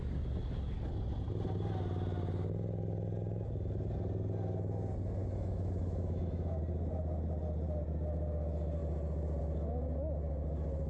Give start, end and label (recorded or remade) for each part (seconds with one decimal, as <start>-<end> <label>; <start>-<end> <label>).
0.0-5.2 recorded; 5.2-6.6 remade; 6.6-10.9 recorded